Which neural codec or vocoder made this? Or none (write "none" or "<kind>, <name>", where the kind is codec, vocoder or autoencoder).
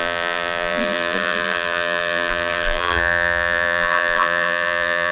vocoder, BigVGAN v2